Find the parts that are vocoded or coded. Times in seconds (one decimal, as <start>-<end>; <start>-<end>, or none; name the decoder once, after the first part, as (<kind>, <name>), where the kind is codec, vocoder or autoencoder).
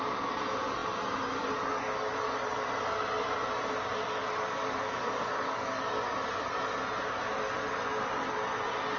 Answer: 4.2-5.8 (codec, DAC)